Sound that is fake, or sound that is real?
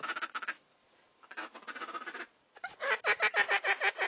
real